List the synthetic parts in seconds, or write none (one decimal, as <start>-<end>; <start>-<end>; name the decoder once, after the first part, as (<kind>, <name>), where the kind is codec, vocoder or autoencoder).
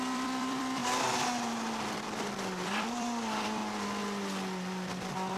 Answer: 0.0-0.8 (vocoder, BigVGAN v2); 1.9-3.6